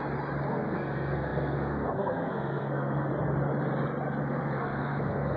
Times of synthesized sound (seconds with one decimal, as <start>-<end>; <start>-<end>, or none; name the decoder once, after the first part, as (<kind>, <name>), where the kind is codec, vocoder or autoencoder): 0.5-3.1 (codec, SNAC); 4.2-5.4

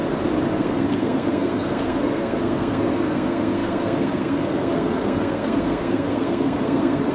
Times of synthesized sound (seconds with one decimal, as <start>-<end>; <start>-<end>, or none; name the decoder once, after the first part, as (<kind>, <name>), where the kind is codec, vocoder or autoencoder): 0.6-7.1 (codec, SNAC)

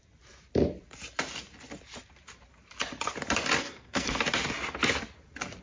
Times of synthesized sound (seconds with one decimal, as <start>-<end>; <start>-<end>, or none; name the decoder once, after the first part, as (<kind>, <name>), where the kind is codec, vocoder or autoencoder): 3.6-4.2 (codec, SNAC)

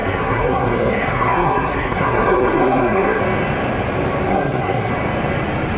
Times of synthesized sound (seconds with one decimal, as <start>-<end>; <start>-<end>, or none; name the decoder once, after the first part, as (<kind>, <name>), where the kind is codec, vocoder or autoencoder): 0.0-3.2 (codec, SNAC); 4.3-4.9

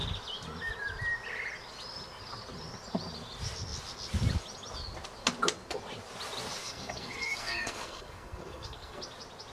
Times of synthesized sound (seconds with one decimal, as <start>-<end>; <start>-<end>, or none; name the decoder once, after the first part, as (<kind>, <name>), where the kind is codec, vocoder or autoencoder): 6.6-9.0 (codec, SNAC)

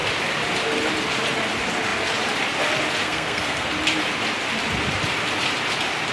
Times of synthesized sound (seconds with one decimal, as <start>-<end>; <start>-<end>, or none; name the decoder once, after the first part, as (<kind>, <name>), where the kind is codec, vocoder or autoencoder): 3.0-3.7 (codec, SNAC)

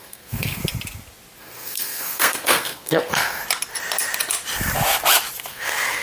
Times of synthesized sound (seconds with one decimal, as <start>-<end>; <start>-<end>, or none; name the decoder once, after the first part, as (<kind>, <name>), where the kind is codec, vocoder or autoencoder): 0.0-0.6 (codec, SNAC); 1.4-3.4; 5.5-6.0

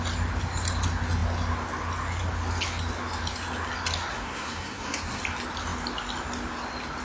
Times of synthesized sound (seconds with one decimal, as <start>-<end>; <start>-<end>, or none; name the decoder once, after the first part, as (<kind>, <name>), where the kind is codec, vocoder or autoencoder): 4.1-5.2 (codec, SNAC)